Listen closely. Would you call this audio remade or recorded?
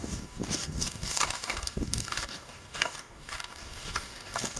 remade